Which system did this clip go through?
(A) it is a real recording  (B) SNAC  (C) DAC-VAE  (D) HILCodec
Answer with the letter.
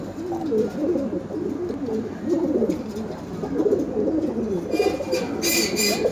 A